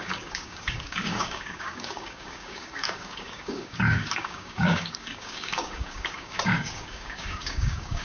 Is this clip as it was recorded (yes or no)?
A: no